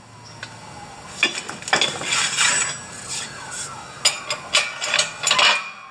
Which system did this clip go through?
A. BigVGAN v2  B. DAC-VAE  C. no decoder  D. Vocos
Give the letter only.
C